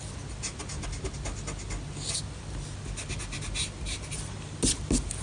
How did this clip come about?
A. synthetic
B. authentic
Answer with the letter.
B